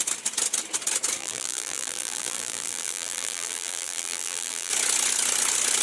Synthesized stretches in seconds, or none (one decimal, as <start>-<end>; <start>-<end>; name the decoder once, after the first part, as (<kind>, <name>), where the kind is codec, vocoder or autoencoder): 1.2-4.7 (vocoder, BigVGAN v2)